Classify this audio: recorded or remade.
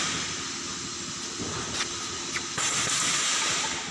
recorded